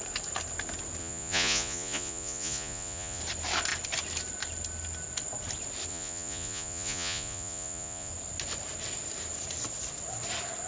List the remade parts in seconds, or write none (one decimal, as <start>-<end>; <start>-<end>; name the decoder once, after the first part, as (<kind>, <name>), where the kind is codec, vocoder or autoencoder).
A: 1.0-3.2 (vocoder, Vocos); 5.9-8.1